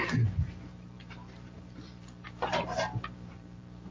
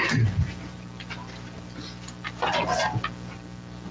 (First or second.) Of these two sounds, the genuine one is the second